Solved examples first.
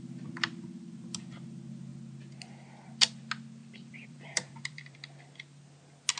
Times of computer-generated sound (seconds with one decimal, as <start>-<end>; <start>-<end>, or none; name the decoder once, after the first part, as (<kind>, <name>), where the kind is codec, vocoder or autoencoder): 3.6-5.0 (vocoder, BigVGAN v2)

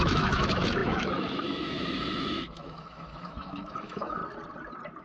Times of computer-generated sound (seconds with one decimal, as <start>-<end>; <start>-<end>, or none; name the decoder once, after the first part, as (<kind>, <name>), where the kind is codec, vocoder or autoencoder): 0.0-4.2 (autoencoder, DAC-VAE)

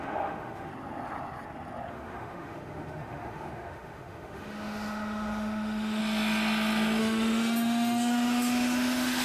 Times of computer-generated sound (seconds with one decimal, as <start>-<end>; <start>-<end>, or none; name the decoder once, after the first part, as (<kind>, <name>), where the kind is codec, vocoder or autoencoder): 0.0-0.7 (autoencoder, DAC-VAE); 1.9-6.0; 7.0-9.2